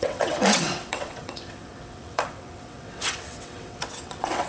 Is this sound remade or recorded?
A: remade